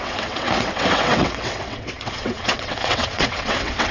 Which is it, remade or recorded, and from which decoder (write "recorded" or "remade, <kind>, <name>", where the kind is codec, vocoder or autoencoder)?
remade, vocoder, WaveNeXt